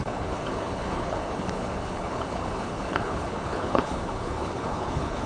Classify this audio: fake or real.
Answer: fake